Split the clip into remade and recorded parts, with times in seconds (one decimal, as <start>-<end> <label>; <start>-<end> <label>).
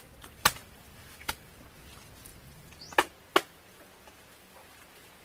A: 0.0-0.6 recorded; 0.6-1.3 remade; 1.3-2.3 recorded; 2.3-2.8 remade; 2.8-5.2 recorded